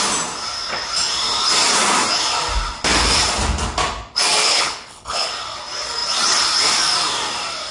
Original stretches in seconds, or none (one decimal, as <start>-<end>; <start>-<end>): 0.0-4.4; 5.3-7.7